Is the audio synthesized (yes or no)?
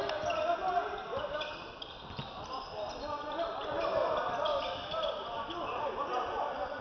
no